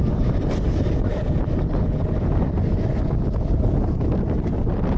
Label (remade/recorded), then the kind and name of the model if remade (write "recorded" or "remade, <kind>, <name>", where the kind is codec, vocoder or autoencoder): recorded